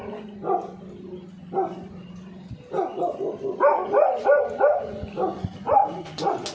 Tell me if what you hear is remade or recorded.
recorded